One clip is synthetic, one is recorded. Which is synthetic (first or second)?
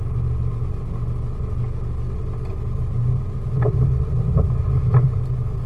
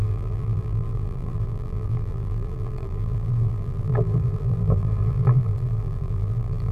second